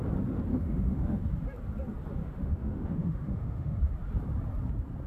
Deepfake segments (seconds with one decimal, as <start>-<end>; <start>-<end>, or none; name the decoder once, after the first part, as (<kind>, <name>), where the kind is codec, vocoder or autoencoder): 0.5-1.3 (autoencoder, DAC-VAE); 2.2-3.8